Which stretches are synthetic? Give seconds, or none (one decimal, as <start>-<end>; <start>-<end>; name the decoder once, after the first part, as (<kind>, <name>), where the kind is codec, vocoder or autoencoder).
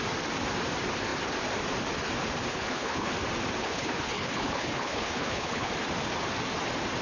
2.5-3.1 (codec, HILCodec); 3.6-5.7